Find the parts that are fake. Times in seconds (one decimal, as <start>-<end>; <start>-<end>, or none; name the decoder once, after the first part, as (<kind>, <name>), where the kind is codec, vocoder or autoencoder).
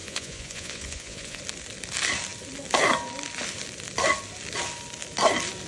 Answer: 0.0-1.4 (vocoder, Vocos)